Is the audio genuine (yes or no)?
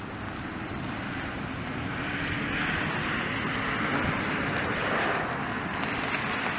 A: yes